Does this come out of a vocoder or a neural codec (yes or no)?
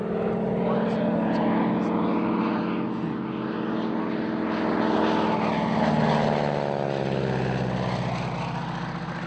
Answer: no